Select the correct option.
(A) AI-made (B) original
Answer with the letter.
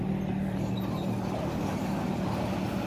B